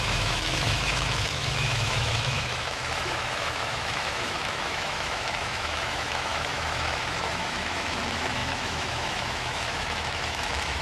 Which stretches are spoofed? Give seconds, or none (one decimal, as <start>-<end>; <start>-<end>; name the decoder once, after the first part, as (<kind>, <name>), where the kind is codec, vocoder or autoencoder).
0.0-10.8 (autoencoder, DAC-VAE)